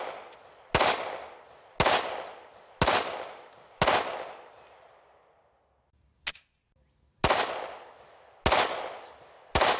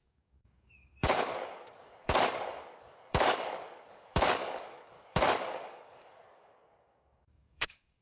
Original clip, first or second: first